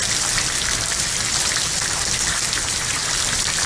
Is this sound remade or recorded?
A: recorded